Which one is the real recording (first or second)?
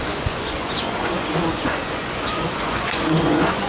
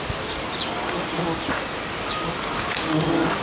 second